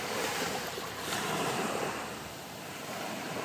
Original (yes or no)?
no